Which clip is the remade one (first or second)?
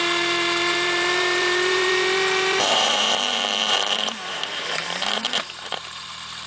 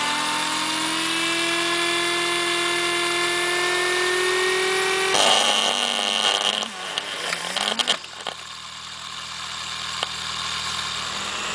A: first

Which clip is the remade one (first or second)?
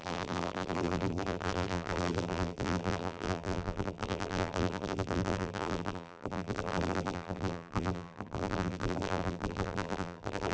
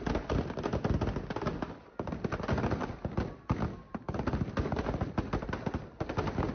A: first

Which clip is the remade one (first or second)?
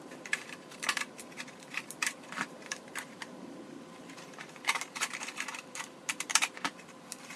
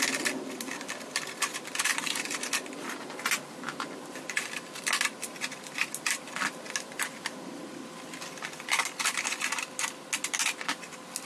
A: first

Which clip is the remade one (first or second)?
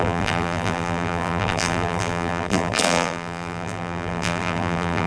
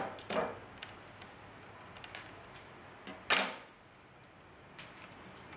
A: first